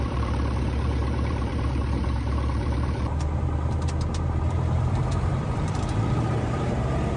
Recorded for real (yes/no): no